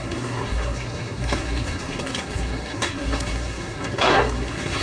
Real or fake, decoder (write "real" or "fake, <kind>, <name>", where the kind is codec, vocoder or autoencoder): fake, codec, SNAC